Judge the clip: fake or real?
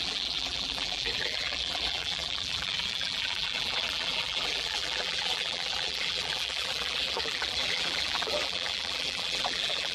fake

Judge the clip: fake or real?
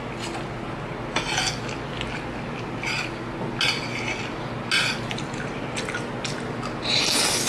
real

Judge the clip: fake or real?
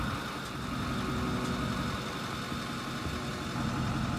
real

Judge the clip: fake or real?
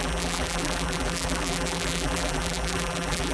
fake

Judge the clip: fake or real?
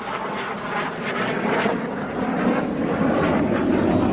real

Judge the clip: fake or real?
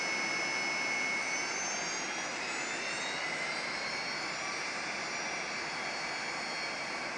real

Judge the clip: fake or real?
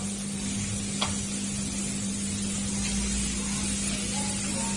real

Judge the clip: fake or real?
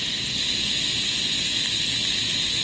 real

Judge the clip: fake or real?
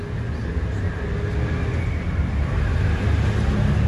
real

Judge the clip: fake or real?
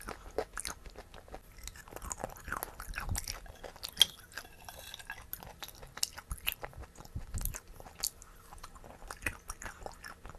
real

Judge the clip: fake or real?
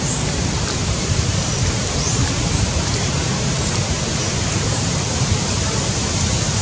fake